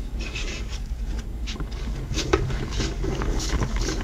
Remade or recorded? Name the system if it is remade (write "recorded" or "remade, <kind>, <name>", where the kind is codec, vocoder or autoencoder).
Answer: remade, codec, DAC